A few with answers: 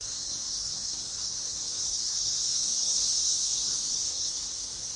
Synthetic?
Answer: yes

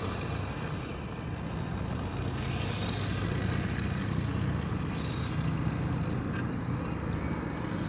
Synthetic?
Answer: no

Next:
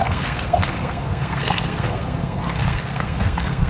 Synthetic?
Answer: yes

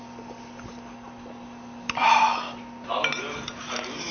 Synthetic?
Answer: no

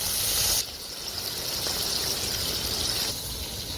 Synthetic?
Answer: no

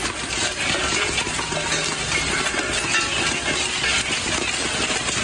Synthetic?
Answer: no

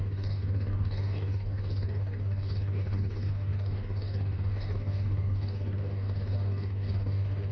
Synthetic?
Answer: yes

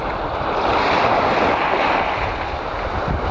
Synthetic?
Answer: no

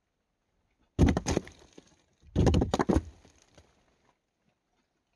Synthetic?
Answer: no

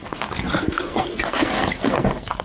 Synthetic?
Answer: yes